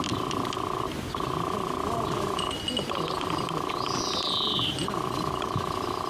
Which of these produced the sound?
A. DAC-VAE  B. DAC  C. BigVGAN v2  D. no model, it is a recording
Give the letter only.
D